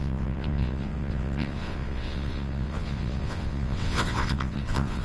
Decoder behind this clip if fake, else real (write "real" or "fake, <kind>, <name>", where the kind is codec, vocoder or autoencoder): fake, vocoder, WaveNeXt